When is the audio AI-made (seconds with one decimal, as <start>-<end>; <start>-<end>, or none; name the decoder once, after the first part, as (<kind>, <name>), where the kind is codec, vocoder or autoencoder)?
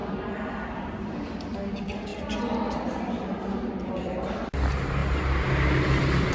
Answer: none